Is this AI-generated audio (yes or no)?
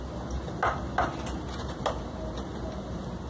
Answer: no